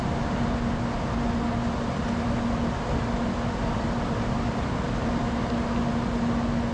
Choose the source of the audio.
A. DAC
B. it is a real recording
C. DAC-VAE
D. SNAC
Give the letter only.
B